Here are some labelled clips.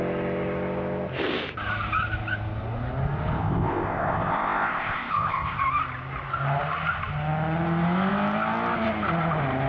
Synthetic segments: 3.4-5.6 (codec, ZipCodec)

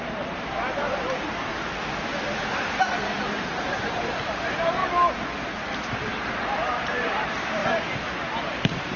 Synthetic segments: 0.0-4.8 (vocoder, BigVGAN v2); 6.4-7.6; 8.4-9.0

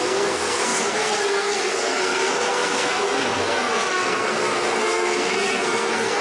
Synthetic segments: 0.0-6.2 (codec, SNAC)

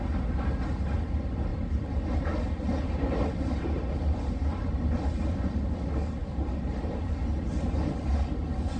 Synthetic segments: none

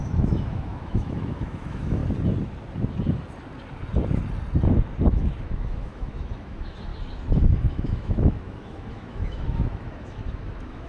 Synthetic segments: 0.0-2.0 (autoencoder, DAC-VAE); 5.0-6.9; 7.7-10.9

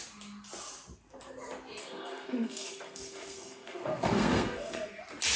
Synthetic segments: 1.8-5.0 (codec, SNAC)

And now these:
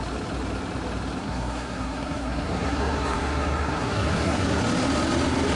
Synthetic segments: 1.2-4.6 (codec, SNAC)

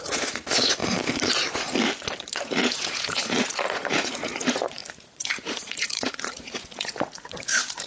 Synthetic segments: 0.0-0.8 (vocoder, Vocos); 2.3-7.9